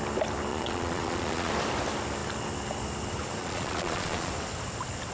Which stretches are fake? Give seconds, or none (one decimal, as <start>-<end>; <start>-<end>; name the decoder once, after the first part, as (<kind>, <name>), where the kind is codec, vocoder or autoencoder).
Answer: 0.5-1.5 (vocoder, Vocos); 3.4-4.3

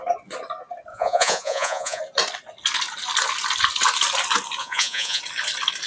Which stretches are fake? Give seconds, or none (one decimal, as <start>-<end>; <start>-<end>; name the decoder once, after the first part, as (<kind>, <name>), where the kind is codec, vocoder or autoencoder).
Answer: 0.9-2.0 (vocoder, Vocos); 4.6-5.2

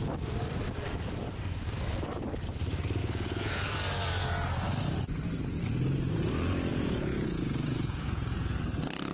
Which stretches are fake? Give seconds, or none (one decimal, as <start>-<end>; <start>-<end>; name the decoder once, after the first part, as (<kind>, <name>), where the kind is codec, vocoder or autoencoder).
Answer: 3.0-3.7 (vocoder, Vocos); 6.7-8.6

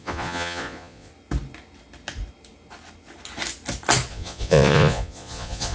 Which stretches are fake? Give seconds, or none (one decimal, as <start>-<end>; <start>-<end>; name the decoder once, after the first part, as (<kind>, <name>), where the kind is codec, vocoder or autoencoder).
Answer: 0.0-1.1 (vocoder, Vocos); 4.1-5.7